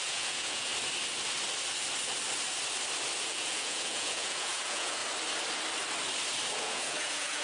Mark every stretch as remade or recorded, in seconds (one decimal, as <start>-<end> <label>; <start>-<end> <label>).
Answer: 0.0-0.7 remade; 0.7-3.2 recorded; 3.2-5.0 remade; 5.0-6.5 recorded; 6.5-7.4 remade